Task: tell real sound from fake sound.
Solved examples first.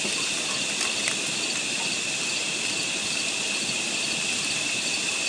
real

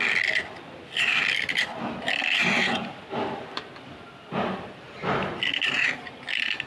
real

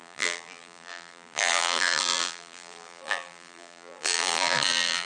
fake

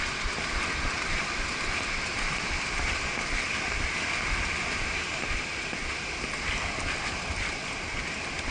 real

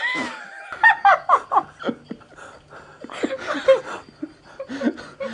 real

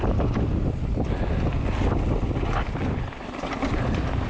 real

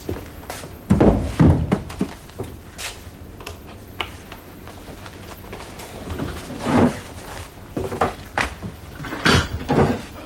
real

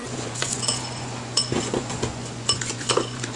fake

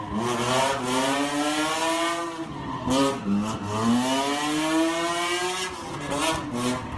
real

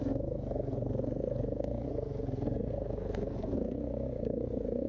fake